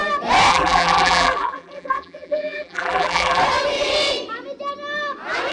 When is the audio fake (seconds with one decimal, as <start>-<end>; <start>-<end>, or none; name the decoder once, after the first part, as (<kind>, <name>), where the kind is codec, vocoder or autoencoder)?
0.5-3.4 (vocoder, BigVGAN v2)